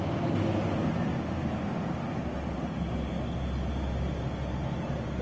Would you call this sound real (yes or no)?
yes